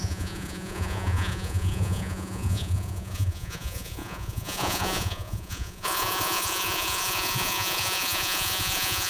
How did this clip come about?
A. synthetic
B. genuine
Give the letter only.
A